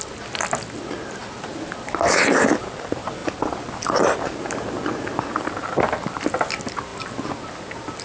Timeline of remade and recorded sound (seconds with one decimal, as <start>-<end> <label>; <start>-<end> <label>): 0.0-8.0 recorded